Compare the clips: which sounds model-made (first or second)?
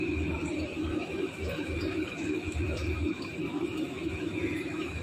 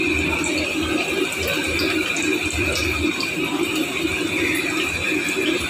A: first